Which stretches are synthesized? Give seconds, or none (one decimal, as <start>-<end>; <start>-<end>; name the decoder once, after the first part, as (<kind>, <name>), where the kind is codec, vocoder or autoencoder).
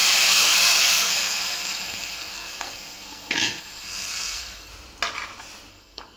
0.0-4.7 (codec, SNAC); 5.7-6.2